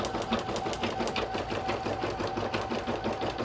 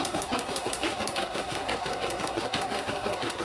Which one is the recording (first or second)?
first